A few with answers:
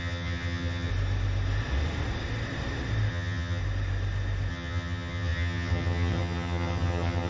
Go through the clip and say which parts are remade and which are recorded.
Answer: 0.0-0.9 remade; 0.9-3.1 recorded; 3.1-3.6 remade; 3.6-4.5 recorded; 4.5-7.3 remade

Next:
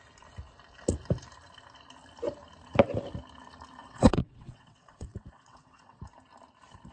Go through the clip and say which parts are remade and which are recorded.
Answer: 0.0-3.8 recorded; 3.8-6.0 remade; 6.0-6.9 recorded

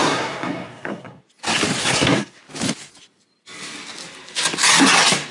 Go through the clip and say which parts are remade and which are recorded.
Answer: 0.0-1.2 remade; 1.2-1.8 recorded; 1.8-2.4 remade; 2.4-5.3 recorded